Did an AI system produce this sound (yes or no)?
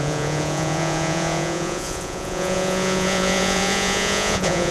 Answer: yes